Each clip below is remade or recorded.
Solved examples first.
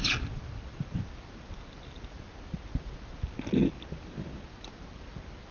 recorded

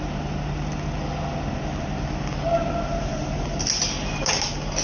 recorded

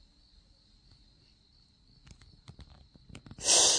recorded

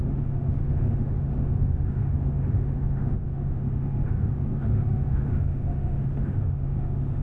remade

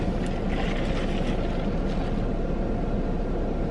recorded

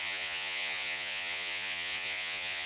remade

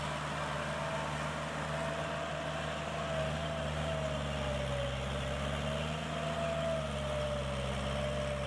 recorded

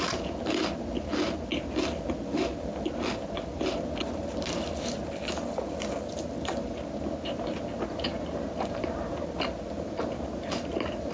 recorded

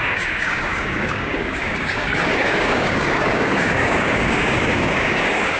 remade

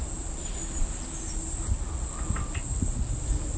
recorded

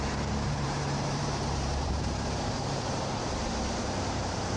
remade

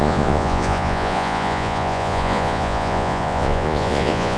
remade